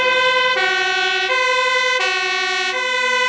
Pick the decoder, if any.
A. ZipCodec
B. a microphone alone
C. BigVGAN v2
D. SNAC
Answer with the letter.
B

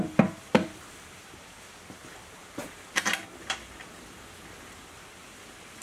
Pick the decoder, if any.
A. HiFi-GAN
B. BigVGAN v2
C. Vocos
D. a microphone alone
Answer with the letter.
B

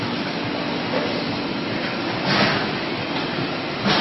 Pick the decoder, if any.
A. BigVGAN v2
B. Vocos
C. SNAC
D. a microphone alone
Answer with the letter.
D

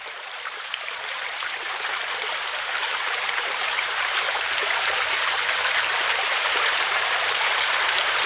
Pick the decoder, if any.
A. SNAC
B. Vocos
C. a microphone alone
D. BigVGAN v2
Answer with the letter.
D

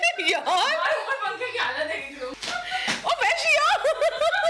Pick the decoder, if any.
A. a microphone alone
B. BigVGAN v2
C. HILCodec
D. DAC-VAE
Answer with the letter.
A